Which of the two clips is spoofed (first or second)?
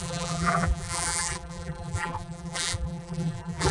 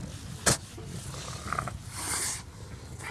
first